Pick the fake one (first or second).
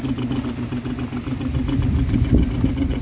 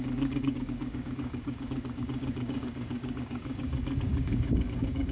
second